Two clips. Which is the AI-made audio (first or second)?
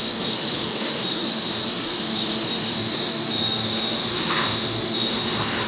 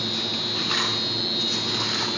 first